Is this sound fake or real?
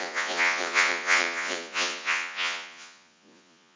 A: fake